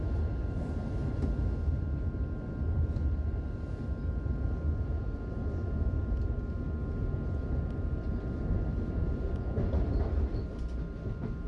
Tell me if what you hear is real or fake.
real